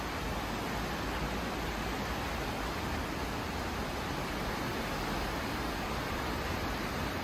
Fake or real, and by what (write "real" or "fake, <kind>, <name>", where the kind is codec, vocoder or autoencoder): real